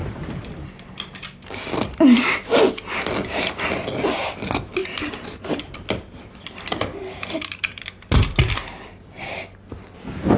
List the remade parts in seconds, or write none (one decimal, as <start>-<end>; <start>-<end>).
0.0-4.8; 6.3-10.4